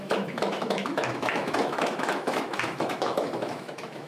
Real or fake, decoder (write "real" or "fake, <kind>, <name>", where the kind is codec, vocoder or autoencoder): fake, autoencoder, DAC-VAE